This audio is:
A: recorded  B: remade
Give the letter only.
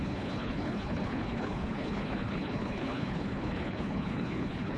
B